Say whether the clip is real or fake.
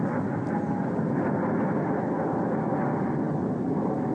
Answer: real